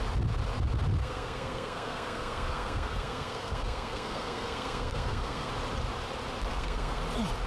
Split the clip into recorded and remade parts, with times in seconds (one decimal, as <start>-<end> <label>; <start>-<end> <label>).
0.0-1.0 recorded; 1.0-5.5 remade; 5.5-6.5 recorded; 6.5-7.0 remade; 7.0-7.5 recorded